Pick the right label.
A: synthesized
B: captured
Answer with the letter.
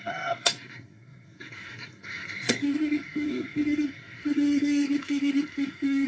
A